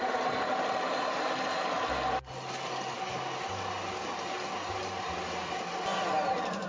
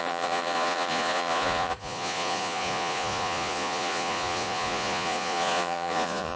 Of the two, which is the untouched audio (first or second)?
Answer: first